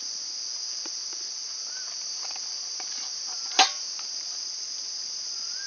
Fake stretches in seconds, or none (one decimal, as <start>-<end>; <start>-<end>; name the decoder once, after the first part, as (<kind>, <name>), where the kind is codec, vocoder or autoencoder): none